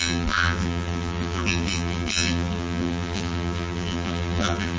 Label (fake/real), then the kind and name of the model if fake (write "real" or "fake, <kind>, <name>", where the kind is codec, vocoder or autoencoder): fake, vocoder, BigVGAN v2